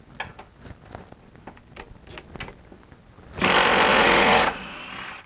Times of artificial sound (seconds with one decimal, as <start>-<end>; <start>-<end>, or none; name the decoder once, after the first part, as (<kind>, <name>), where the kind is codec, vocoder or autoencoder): 3.9-4.8 (vocoder, Vocos)